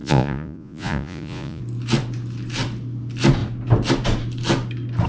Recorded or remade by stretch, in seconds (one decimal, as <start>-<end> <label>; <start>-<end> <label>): 0.0-1.6 remade; 1.6-5.1 recorded